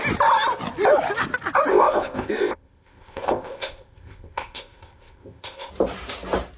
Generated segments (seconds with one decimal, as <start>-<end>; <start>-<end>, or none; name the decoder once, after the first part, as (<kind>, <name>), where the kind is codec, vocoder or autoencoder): 1.7-5.7 (codec, ZipCodec)